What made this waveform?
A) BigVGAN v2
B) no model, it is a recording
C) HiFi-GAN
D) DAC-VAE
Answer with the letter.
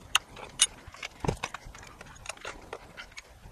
A